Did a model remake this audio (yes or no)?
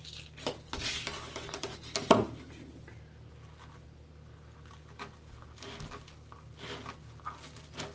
no